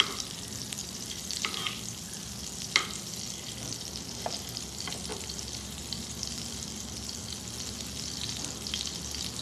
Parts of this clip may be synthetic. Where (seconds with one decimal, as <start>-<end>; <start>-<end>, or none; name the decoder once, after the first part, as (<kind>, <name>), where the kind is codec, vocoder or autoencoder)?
0.8-2.1 (vocoder, BigVGAN v2); 5.1-7.3